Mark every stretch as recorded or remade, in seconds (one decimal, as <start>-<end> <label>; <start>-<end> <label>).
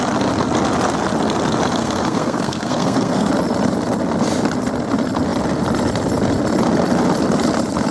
0.0-1.8 recorded; 1.8-3.3 remade; 3.3-7.9 recorded